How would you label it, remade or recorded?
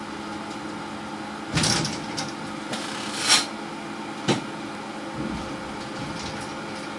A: recorded